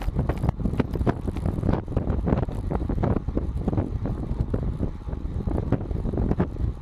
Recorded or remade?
recorded